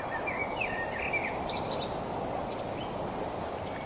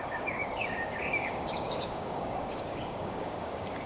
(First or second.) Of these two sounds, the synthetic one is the second